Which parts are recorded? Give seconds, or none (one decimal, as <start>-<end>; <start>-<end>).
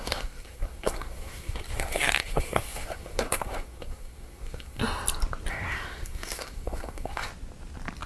4.8-5.5; 7.3-8.1